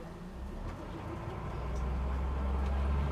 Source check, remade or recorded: recorded